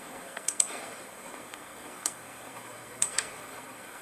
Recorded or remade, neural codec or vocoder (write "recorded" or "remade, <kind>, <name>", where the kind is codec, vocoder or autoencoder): remade, codec, SNAC